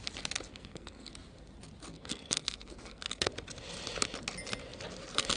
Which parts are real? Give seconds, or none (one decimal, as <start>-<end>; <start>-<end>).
0.0-0.5; 1.1-1.9; 3.3-5.4